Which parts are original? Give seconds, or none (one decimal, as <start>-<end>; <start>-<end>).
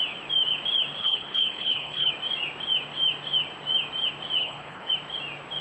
0.0-1.0; 2.1-4.4; 4.9-5.6